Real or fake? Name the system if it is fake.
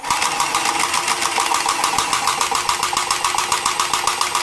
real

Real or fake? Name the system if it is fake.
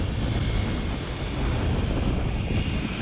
real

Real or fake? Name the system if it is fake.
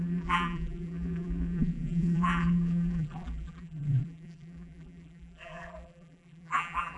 fake, vocoder, BigVGAN v2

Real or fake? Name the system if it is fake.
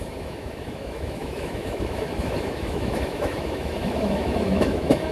fake, autoencoder, DAC-VAE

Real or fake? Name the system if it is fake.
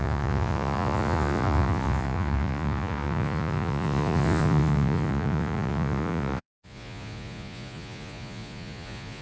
fake, vocoder, Vocos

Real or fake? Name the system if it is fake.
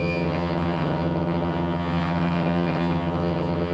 fake, vocoder, HiFi-GAN